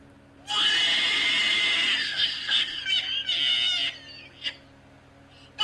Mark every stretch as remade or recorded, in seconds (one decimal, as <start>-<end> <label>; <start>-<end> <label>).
0.0-2.0 recorded; 2.0-2.8 remade; 2.8-5.6 recorded